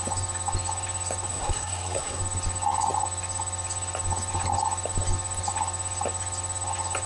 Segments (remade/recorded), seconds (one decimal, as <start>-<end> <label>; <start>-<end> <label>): 0.0-1.3 recorded; 1.3-2.2 remade; 2.2-7.1 recorded